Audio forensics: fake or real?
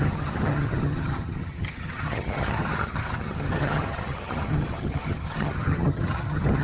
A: fake